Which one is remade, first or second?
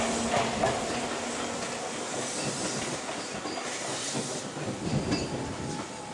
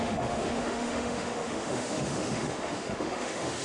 second